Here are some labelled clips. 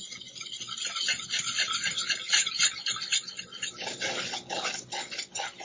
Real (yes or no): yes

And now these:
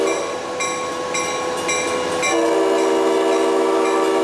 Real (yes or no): yes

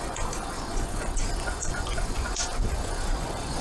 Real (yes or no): no